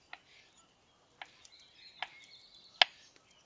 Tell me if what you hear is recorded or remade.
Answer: recorded